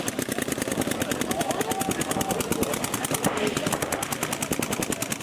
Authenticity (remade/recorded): recorded